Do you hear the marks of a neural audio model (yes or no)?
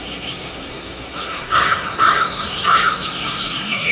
yes